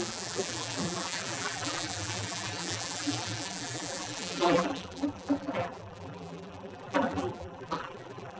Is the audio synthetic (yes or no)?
yes